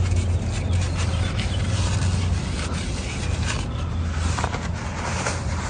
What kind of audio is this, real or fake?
real